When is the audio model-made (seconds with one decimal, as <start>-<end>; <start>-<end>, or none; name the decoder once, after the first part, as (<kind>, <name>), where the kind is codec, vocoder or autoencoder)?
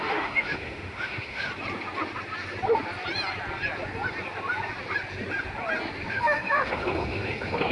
0.0-1.5 (autoencoder, DAC-VAE); 6.1-7.7